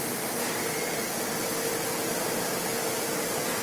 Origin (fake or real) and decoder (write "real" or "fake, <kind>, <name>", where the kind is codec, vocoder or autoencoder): real